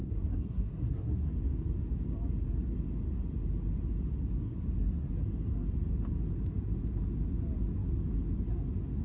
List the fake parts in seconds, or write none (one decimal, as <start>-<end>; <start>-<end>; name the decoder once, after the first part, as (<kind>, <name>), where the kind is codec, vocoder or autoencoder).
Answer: 0.0-1.3 (codec, SNAC); 4.4-5.1